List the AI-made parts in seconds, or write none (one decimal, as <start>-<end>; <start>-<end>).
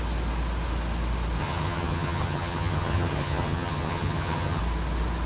1.4-4.6